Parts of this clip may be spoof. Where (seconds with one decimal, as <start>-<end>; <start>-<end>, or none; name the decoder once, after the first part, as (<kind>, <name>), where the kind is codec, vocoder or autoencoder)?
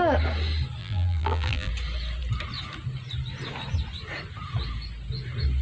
0.8-1.7 (vocoder, BigVGAN v2)